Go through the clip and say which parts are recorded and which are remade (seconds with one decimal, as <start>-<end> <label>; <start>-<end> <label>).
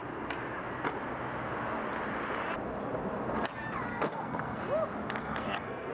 0.0-3.9 recorded; 3.9-4.6 remade; 4.6-5.0 recorded; 5.0-5.9 remade